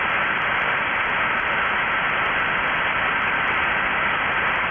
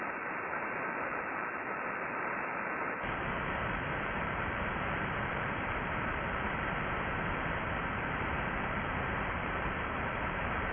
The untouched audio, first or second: first